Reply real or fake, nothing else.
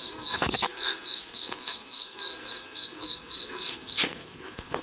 fake